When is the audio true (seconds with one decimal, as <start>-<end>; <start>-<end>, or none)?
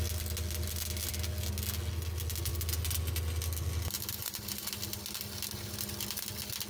0.0-6.7